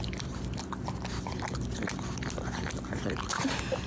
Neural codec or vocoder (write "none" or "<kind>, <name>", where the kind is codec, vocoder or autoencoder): none